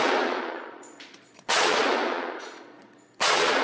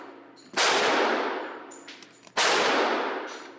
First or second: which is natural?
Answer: second